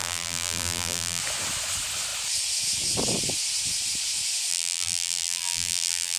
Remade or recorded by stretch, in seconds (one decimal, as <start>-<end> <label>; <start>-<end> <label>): 0.0-1.2 remade; 1.2-4.5 recorded; 4.5-6.2 remade